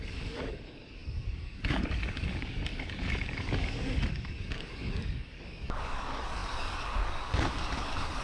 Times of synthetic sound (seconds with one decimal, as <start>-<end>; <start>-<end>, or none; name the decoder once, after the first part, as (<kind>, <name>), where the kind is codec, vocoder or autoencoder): 0.0-8.2 (codec, DAC)